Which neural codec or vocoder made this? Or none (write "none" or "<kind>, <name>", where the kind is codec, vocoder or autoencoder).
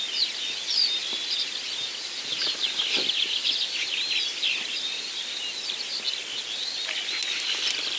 none